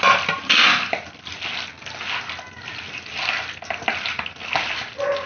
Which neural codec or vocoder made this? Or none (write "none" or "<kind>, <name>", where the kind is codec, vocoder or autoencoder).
none